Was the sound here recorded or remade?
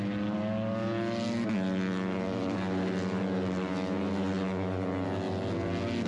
recorded